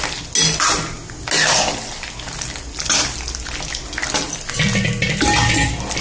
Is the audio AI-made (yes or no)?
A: no